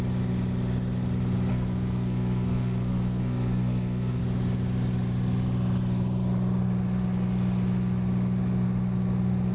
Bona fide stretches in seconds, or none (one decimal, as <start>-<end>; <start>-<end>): 0.0-1.5; 4.2-9.5

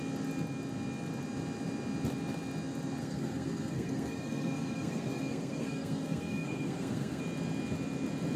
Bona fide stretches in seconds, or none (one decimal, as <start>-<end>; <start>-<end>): 0.0-3.0; 7.2-8.4

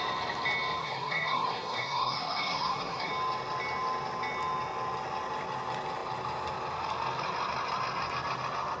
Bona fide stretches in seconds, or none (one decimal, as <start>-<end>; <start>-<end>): 0.0-0.8; 3.1-8.8

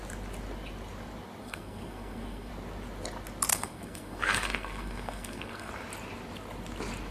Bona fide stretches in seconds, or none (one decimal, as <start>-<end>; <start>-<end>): 0.0-1.4; 2.5-3.5; 5.7-7.1

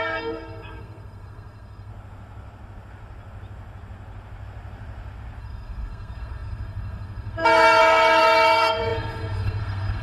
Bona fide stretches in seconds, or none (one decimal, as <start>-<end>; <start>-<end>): 1.9-5.4

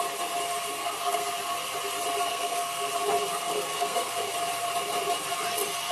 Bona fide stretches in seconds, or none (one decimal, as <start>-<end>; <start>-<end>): 0.0-0.7; 1.3-2.3; 2.9-3.3; 4.3-5.9

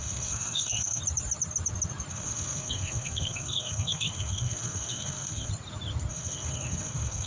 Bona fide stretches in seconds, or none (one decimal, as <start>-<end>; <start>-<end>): 1.0-2.1; 5.5-6.1